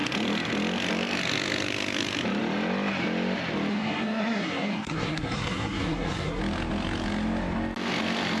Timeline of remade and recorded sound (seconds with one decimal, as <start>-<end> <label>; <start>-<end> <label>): 0.0-3.7 recorded; 3.7-6.4 remade; 6.4-8.4 recorded

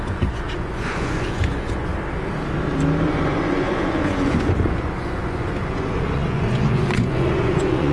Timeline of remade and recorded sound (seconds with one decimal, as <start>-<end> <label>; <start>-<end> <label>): 0.0-1.9 remade; 1.9-3.1 recorded; 3.1-7.9 remade

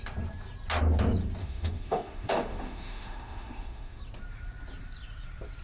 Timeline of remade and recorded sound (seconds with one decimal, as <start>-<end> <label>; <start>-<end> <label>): 0.0-1.4 recorded; 1.4-4.0 remade; 4.0-5.6 recorded

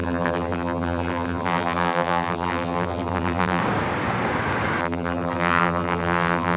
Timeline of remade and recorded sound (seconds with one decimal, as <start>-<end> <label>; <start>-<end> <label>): 0.0-3.6 remade; 3.6-4.8 recorded; 4.8-6.6 remade

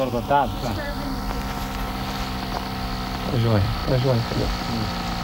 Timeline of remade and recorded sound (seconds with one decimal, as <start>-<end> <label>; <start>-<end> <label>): 0.0-5.2 recorded

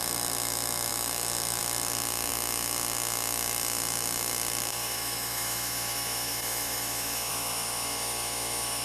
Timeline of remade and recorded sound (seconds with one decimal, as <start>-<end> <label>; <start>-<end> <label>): 0.0-8.8 remade

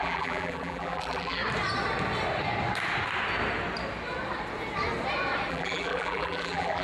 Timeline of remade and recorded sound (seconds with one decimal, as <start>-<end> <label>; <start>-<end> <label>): 0.0-1.4 remade; 1.4-5.5 recorded; 5.5-6.8 remade

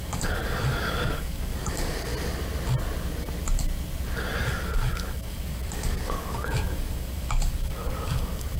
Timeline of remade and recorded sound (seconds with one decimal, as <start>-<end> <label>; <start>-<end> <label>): 0.0-2.1 remade; 2.1-4.5 recorded; 4.5-8.6 remade